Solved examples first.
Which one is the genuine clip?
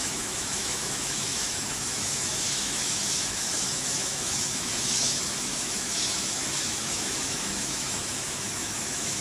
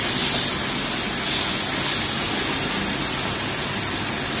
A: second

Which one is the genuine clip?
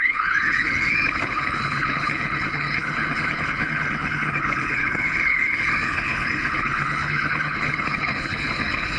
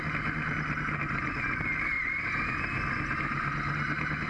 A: second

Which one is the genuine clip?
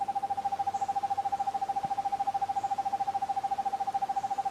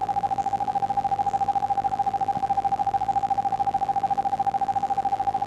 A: first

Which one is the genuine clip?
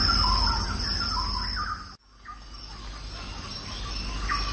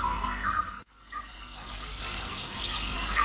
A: first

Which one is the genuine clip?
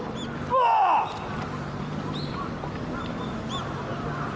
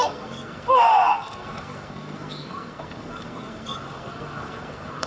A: first